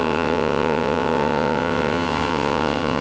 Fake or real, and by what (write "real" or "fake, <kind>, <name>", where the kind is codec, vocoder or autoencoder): fake, vocoder, WaveNeXt